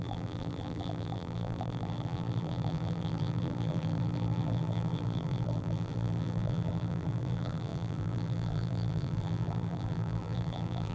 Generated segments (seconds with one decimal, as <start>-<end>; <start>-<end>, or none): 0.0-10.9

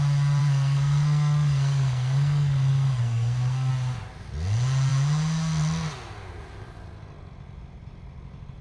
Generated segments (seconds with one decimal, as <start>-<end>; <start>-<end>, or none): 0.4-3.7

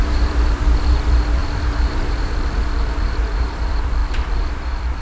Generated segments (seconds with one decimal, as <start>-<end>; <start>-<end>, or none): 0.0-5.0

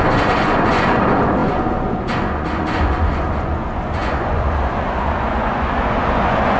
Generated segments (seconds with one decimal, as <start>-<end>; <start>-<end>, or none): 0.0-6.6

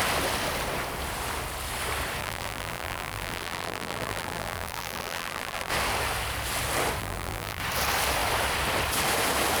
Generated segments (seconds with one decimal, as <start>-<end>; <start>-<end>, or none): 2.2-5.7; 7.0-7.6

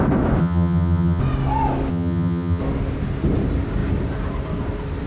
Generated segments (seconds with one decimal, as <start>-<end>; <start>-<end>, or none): 0.4-1.2; 1.9-2.6

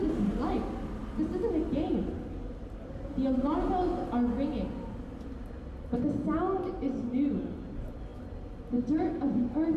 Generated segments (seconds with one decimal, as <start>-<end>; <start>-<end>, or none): none